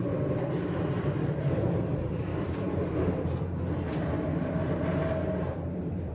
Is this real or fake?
fake